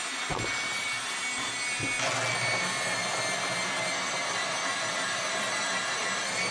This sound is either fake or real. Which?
real